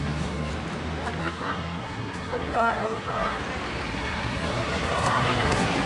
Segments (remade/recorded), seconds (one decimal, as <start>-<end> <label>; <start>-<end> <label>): 0.0-0.5 remade; 0.5-1.2 recorded; 1.2-3.4 remade; 3.4-3.9 recorded; 3.9-5.9 remade